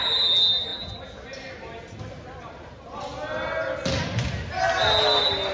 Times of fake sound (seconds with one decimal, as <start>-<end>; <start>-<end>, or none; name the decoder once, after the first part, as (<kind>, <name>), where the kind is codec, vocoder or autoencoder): none